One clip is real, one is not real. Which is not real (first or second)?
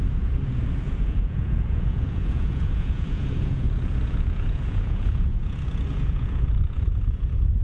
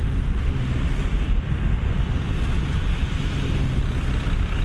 first